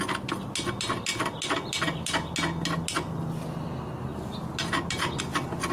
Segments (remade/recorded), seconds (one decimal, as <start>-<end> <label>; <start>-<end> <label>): 0.0-5.7 recorded